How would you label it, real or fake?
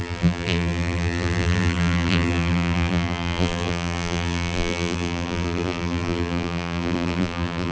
fake